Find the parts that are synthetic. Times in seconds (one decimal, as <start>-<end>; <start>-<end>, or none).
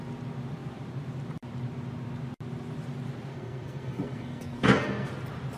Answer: 3.3-5.1